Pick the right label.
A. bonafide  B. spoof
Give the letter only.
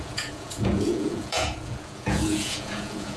B